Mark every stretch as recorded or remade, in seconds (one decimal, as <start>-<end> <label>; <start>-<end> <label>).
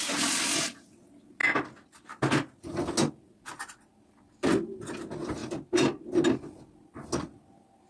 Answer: 0.0-7.9 recorded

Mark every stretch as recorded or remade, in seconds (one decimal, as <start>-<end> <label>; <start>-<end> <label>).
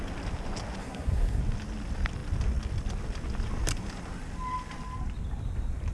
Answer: 0.0-0.8 recorded; 0.8-1.4 remade; 1.4-5.9 recorded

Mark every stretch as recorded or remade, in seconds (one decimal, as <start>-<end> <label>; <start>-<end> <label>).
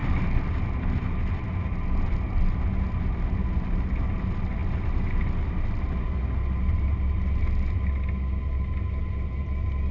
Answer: 0.0-9.9 recorded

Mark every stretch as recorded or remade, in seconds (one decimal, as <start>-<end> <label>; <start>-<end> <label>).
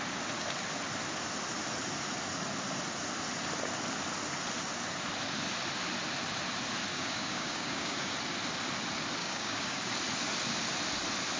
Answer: 0.0-6.9 recorded; 6.9-8.1 remade; 8.1-9.2 recorded; 9.2-9.9 remade; 9.9-11.4 recorded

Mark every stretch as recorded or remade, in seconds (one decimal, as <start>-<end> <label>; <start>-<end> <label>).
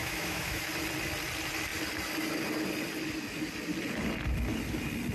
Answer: 0.0-0.7 remade; 0.7-5.1 recorded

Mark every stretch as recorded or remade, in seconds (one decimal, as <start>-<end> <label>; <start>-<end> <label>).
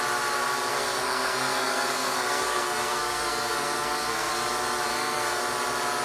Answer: 0.0-0.7 recorded; 0.7-4.3 remade; 4.3-4.9 recorded; 4.9-5.4 remade; 5.4-6.0 recorded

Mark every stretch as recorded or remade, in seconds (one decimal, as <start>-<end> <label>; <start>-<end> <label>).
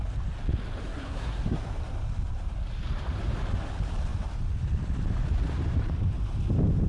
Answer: 0.0-0.9 recorded; 0.9-1.6 remade; 1.6-6.9 recorded